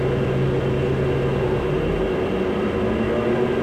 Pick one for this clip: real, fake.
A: real